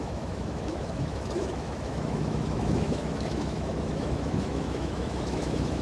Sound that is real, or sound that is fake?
fake